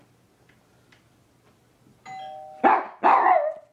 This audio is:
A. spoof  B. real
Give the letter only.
B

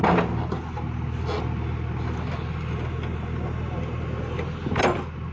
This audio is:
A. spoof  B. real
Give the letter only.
B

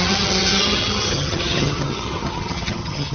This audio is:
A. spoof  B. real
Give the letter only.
A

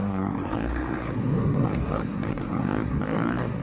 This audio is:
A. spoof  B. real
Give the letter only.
A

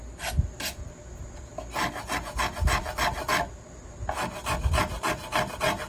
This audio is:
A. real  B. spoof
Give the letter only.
A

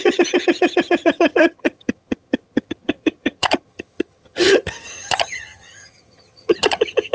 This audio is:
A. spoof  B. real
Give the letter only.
A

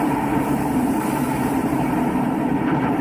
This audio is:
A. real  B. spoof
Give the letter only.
B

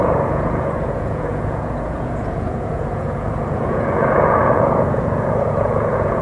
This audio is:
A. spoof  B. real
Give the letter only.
A